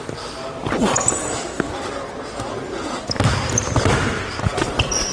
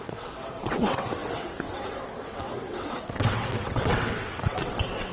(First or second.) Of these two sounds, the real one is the first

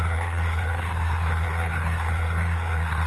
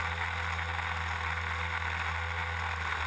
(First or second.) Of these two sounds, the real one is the second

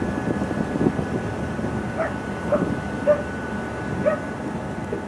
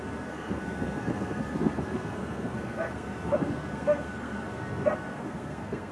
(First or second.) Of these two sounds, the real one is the first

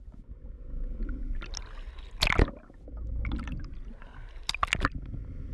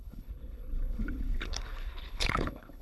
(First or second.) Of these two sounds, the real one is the first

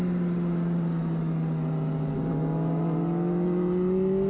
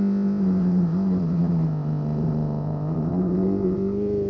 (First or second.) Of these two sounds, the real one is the first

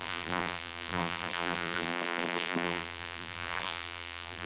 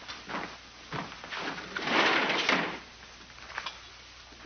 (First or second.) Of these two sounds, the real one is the second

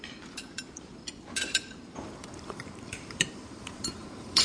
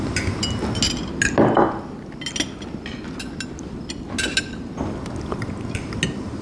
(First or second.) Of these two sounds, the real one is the second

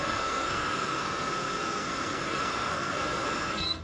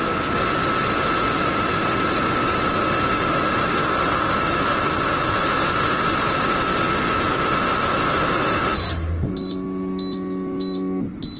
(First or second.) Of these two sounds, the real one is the second